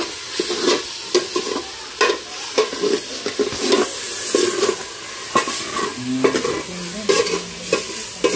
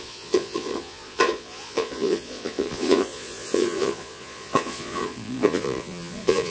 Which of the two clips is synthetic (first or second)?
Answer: second